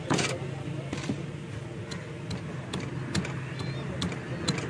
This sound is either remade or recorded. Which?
recorded